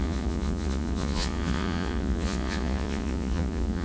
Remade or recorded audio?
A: remade